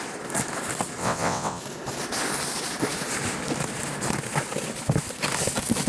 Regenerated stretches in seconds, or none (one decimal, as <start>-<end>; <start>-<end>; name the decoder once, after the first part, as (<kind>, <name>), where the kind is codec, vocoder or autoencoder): 1.0-1.6 (vocoder, WaveNeXt)